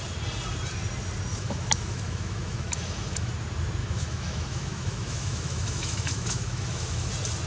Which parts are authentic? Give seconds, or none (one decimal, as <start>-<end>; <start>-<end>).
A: 0.0-1.3; 3.3-3.8; 7.1-7.5